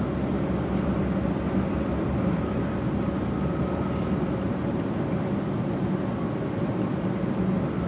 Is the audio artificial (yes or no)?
no